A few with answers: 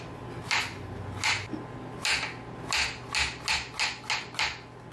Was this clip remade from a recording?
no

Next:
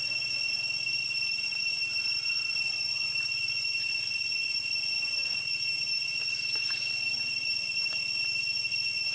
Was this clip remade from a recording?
no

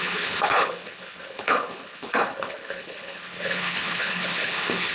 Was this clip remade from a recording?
yes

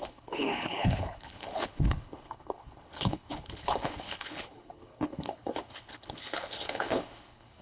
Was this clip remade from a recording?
yes